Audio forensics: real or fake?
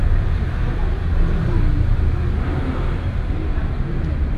real